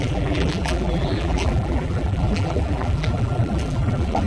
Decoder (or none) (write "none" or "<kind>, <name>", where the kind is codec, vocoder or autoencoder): vocoder, BigVGAN v2